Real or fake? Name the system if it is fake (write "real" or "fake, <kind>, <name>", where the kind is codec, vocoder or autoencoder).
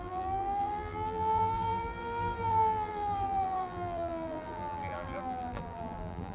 fake, vocoder, BigVGAN v2